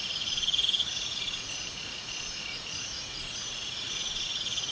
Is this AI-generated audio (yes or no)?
yes